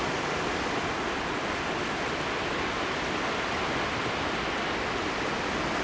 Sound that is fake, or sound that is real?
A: real